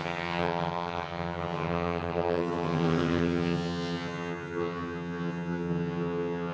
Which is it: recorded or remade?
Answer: remade